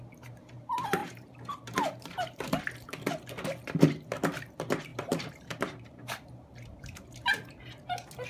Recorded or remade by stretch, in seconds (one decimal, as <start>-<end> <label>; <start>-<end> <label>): 0.0-1.0 recorded; 1.0-2.6 remade; 2.6-4.9 recorded; 4.9-7.4 remade; 7.4-8.3 recorded